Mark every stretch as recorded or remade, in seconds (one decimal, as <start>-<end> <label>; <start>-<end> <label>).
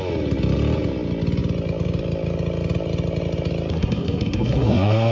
0.0-3.7 recorded; 3.7-5.1 remade